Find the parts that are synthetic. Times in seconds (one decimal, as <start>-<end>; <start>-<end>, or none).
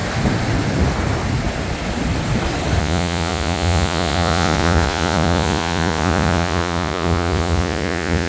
2.8-8.3